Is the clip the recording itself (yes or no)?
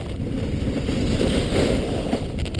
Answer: yes